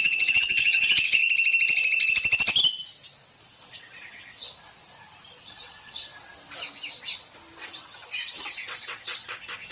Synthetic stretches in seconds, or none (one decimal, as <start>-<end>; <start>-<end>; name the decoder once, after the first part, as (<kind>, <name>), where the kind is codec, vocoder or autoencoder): 0.0-1.2 (vocoder, WaveNeXt); 3.4-4.4; 5.3-6.1; 7.6-9.7